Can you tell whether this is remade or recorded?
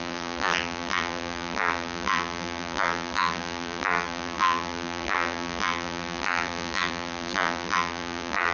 remade